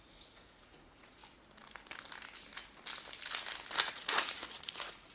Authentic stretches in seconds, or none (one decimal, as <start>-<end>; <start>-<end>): 1.2-3.9